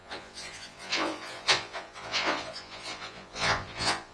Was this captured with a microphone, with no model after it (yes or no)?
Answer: no